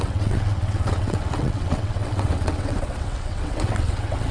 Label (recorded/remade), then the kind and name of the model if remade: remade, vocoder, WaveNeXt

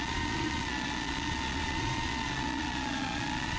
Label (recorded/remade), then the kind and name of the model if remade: remade, vocoder, Vocos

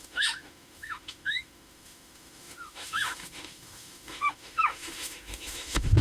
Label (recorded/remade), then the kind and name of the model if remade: remade, autoencoder, DAC-VAE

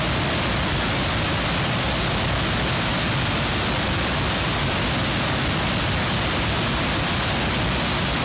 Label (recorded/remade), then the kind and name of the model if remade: recorded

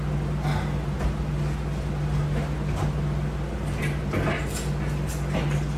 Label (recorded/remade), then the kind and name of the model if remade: recorded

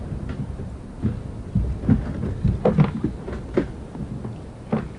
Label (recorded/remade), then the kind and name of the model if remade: recorded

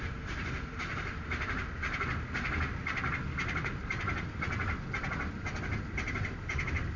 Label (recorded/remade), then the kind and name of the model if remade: recorded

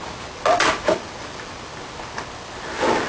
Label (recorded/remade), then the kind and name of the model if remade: recorded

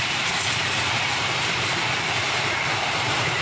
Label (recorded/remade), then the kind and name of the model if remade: remade, vocoder, BigVGAN v2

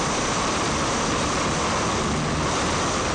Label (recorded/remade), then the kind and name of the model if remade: remade, vocoder, BigVGAN v2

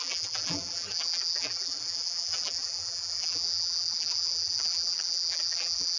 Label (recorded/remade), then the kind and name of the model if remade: remade, vocoder, BigVGAN v2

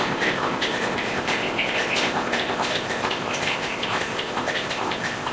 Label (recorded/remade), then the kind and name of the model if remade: remade, codec, ZipCodec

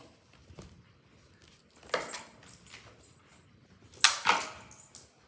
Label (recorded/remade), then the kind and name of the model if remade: recorded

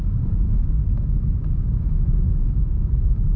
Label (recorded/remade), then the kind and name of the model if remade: remade, codec, DAC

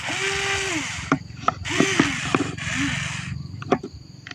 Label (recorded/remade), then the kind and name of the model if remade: recorded